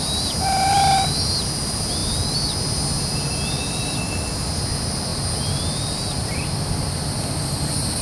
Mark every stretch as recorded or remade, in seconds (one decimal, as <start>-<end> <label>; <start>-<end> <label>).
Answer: 0.0-8.0 recorded